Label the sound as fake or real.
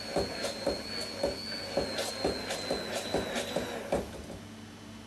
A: real